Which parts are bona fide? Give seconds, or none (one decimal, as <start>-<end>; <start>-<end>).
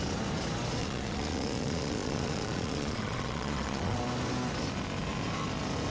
0.0-0.8; 4.0-5.9